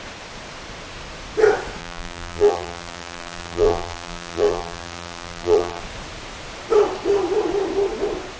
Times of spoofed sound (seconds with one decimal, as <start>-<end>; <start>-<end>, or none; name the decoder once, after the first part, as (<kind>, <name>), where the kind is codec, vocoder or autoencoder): 1.8-5.8 (vocoder, BigVGAN v2)